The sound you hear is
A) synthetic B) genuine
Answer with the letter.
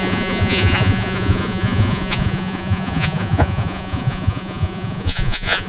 A